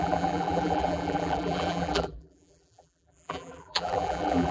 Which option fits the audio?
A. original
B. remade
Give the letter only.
B